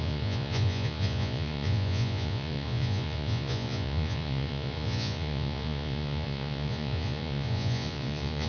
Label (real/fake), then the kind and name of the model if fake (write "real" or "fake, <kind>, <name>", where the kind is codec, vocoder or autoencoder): fake, vocoder, Vocos